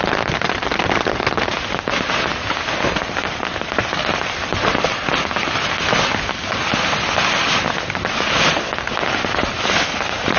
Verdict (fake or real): real